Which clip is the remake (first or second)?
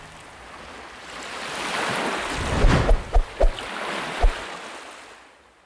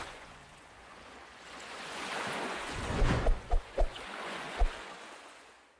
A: second